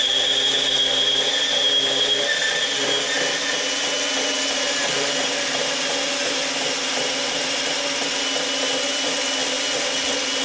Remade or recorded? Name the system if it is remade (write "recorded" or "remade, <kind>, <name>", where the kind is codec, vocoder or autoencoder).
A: recorded